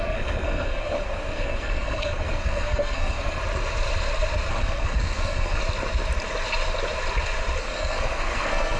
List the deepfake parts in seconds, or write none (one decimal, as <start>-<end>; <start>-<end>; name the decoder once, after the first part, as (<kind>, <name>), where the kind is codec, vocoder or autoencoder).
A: 0.0-3.4 (codec, SNAC); 4.5-5.6; 7.6-8.8